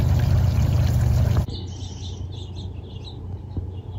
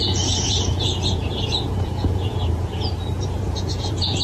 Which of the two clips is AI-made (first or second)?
second